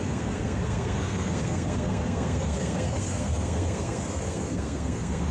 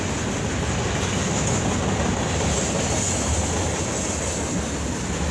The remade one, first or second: first